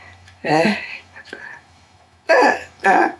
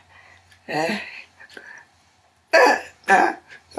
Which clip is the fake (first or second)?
first